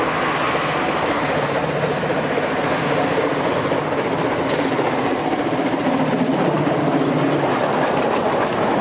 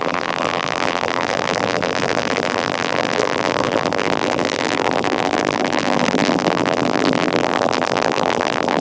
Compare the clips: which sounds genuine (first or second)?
first